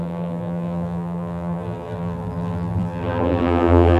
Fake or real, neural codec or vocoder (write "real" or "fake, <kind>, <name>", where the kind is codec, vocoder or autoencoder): fake, vocoder, BigVGAN v2